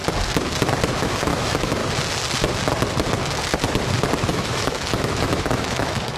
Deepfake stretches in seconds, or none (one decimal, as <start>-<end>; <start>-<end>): 1.0-1.8; 4.3-6.2